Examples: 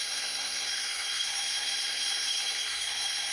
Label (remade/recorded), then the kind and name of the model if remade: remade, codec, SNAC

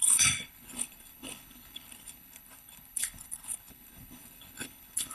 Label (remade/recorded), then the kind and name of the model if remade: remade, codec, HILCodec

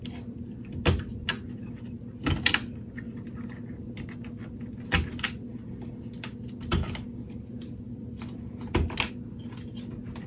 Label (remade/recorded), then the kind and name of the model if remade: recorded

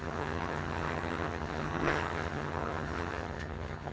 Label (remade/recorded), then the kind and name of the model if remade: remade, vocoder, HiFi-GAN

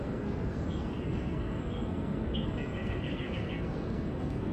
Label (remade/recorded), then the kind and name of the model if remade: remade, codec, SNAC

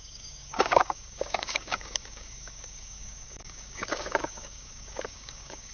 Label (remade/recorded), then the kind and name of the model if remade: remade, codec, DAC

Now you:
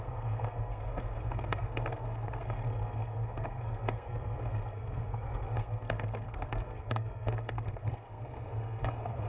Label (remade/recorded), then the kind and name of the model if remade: remade, codec, SNAC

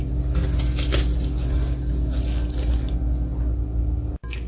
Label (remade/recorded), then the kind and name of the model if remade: recorded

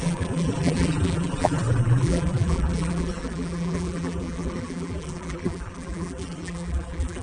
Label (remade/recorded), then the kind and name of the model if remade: remade, vocoder, BigVGAN v2